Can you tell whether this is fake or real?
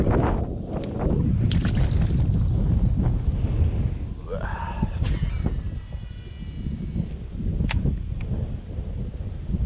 real